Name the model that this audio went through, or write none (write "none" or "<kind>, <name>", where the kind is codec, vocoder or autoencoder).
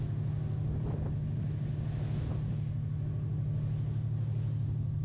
none